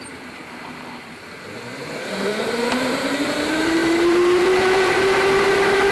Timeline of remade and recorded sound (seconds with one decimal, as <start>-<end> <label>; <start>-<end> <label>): 0.0-5.9 remade